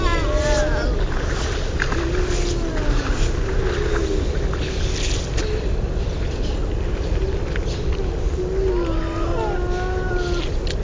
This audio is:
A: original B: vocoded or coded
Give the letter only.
A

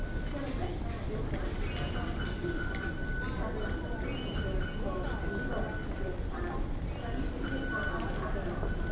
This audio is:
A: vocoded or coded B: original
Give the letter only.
B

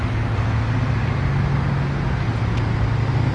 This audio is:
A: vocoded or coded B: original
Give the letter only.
B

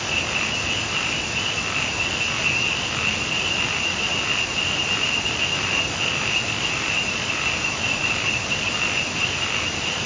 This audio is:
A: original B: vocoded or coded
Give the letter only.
A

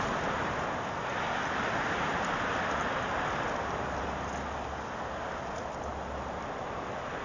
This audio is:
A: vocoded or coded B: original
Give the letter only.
B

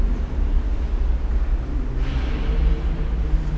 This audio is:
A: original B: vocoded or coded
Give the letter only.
A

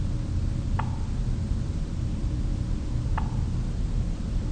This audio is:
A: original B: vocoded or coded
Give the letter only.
A